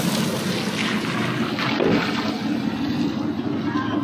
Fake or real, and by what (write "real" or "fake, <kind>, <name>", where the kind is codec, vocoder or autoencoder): real